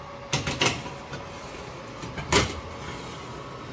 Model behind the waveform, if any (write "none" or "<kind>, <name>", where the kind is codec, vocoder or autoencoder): none